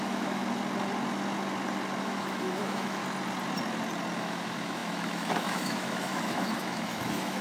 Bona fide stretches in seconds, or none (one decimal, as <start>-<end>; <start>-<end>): 0.4-2.0; 3.0-4.2